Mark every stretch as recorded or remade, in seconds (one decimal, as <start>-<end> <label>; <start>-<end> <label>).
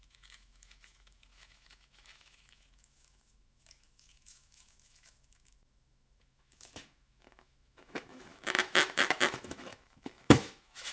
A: 0.0-10.9 remade